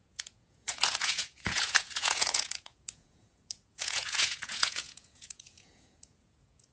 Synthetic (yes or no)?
yes